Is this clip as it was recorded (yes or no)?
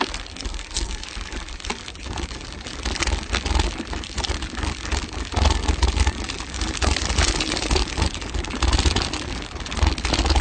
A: yes